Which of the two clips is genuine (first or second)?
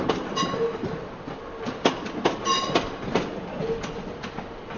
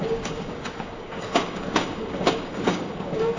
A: first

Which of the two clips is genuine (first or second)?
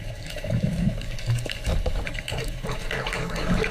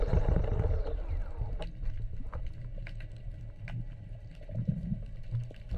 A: second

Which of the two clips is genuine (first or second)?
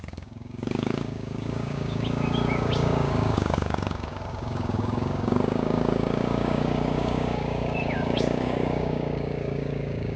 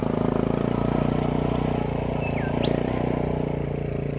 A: second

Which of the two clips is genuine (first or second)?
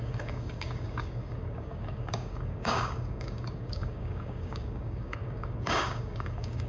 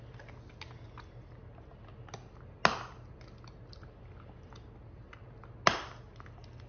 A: second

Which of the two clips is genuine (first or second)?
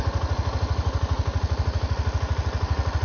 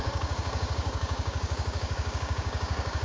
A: first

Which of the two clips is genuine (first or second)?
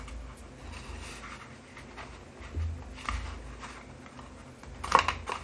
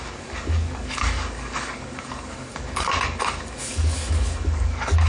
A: first